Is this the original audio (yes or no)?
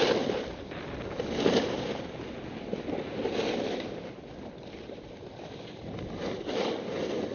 yes